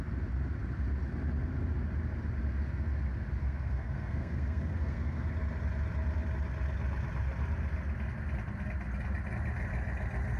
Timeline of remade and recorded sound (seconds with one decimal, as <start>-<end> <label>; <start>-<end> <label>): 0.0-3.4 recorded; 3.4-5.3 remade; 5.3-10.4 recorded